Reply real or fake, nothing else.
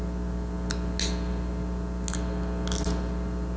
real